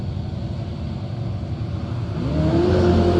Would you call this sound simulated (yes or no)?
no